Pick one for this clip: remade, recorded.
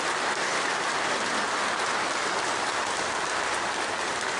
recorded